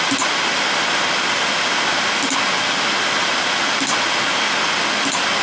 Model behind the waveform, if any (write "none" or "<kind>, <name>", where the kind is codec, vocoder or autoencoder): none